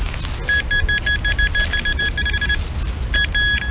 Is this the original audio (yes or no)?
yes